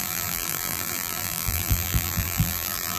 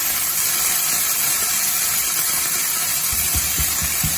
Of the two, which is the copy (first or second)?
first